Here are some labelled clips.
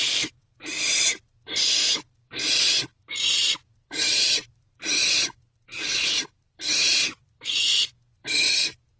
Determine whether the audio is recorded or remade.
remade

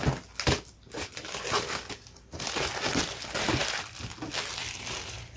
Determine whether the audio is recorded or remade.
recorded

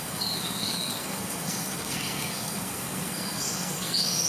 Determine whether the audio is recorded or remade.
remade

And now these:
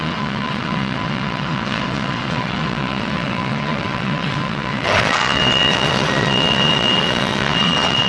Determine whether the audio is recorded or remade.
remade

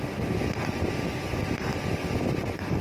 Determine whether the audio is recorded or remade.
recorded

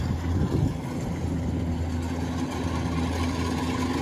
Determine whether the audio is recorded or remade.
recorded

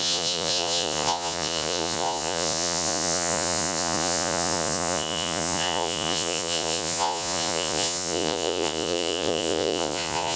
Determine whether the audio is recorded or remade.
remade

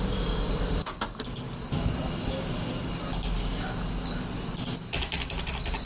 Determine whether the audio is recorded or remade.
recorded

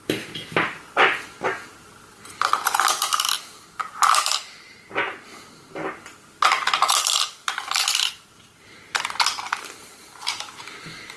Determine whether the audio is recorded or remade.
recorded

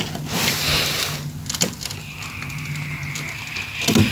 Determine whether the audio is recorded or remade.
recorded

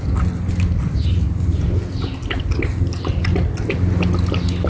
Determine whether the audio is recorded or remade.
recorded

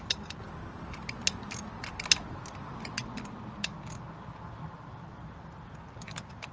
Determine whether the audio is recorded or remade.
recorded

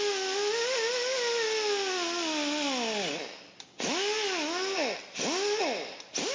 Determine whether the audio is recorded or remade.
recorded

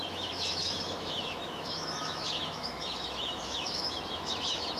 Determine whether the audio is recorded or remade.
remade